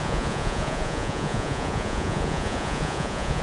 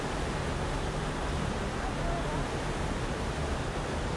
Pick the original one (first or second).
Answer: second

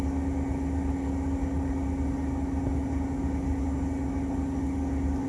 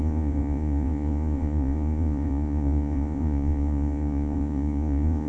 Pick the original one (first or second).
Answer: first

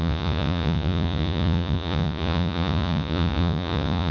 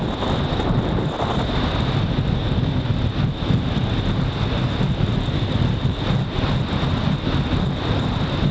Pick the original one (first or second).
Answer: second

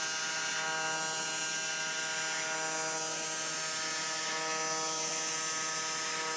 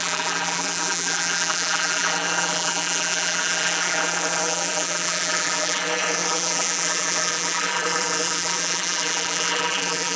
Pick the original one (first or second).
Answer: first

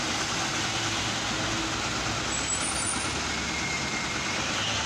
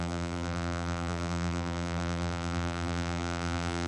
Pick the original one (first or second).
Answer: first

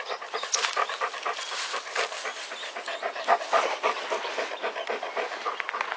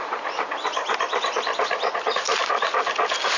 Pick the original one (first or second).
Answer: first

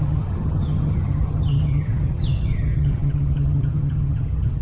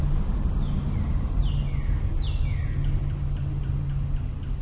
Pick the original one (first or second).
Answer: second